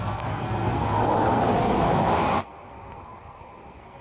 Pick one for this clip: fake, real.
fake